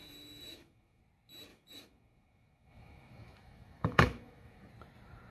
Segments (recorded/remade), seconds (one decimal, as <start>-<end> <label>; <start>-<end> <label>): 0.0-1.0 remade; 1.0-1.5 recorded; 1.5-4.7 remade; 4.7-5.3 recorded

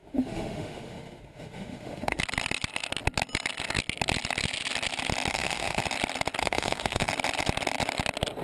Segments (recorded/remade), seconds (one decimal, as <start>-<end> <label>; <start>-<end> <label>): 0.0-2.2 remade; 2.2-5.3 recorded; 5.3-5.8 remade; 5.8-6.4 recorded; 6.4-7.1 remade; 7.1-8.4 recorded